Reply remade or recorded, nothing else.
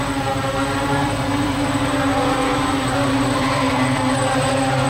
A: remade